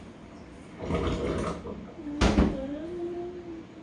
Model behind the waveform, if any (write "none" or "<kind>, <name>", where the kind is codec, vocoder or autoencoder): none